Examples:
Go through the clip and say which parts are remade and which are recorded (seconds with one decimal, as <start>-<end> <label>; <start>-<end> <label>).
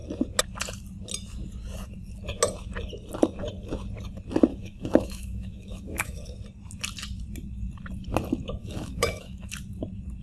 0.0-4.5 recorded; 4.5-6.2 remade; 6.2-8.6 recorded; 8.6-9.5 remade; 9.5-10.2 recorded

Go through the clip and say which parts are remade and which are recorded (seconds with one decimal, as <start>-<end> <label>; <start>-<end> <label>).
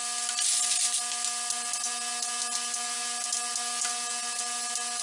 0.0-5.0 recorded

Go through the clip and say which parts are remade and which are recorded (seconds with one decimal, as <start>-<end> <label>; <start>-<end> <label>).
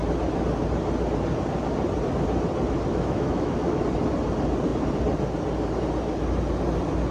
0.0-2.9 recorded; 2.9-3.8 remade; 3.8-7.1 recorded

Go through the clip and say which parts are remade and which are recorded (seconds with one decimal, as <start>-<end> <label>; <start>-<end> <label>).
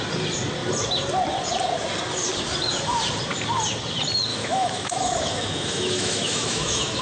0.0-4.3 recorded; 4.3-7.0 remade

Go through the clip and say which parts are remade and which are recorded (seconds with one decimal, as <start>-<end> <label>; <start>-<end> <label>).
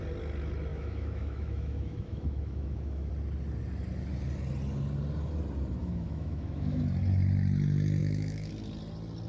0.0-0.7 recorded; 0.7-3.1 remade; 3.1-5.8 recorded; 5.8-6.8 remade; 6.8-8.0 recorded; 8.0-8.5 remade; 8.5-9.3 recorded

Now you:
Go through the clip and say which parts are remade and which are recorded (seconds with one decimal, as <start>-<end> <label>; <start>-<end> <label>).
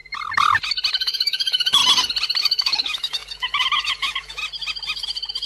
0.0-0.9 recorded; 0.9-1.8 remade; 1.8-2.4 recorded; 2.4-4.4 remade; 4.4-5.5 recorded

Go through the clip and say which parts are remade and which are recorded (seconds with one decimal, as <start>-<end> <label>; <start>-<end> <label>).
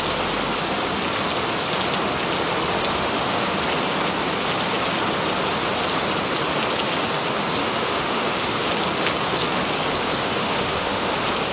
0.0-2.9 recorded; 2.9-3.6 remade; 3.6-7.6 recorded; 7.6-8.7 remade; 8.7-10.2 recorded; 10.2-11.1 remade; 11.1-11.5 recorded